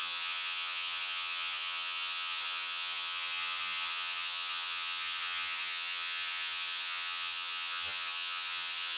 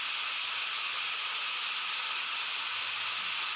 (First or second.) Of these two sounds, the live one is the second